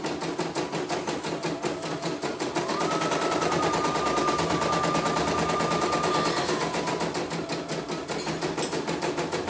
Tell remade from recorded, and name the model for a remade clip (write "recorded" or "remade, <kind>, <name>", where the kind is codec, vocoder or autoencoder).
recorded